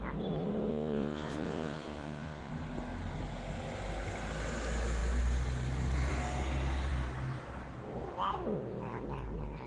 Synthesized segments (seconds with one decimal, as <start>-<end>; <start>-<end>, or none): 0.7-2.5